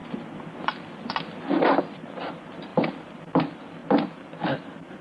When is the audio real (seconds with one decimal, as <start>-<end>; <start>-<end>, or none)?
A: 0.0-5.0